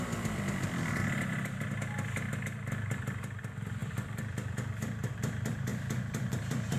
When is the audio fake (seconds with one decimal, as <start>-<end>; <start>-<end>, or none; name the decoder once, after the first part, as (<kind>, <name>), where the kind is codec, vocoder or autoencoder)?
0.0-1.0 (vocoder, BigVGAN v2); 2.7-6.8